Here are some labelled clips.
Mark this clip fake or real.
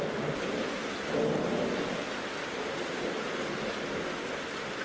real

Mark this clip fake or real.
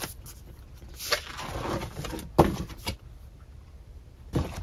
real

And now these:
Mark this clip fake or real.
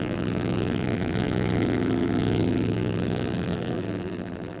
fake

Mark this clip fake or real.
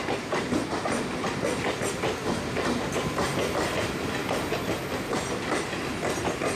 real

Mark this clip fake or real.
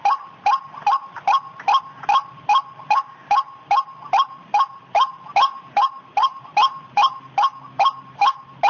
fake